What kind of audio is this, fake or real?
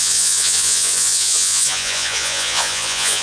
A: fake